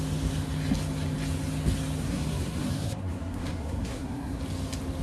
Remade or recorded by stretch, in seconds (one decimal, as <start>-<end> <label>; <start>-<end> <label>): 0.0-2.0 recorded; 2.0-4.4 remade; 4.4-5.0 recorded